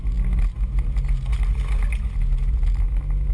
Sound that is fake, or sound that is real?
real